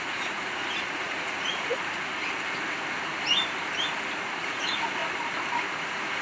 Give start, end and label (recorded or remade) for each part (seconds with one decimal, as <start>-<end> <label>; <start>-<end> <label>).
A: 0.0-2.1 remade; 2.1-4.4 recorded; 4.4-5.0 remade; 5.0-5.5 recorded; 5.5-6.2 remade